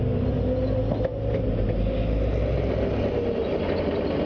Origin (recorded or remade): recorded